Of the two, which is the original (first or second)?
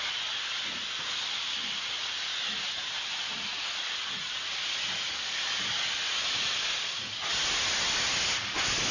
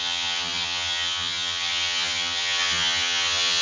first